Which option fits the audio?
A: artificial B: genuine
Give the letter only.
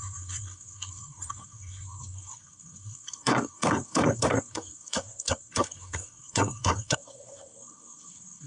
A